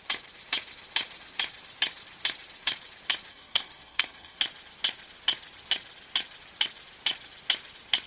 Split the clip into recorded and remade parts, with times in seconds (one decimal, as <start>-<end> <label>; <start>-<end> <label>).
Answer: 0.0-3.3 recorded; 3.3-4.4 remade; 4.4-8.1 recorded